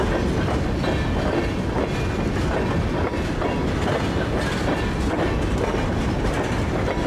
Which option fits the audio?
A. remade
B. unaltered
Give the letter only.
B